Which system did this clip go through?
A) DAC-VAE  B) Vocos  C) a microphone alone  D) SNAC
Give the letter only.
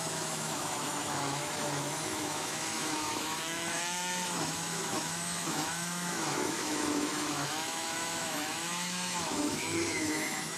A